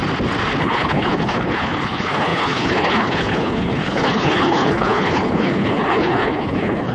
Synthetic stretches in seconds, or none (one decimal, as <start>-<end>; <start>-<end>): 0.6-6.9